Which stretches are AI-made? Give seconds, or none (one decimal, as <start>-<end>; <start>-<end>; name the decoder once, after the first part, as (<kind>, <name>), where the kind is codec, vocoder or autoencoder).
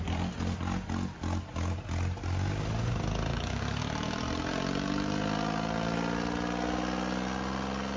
3.3-3.8 (codec, DAC)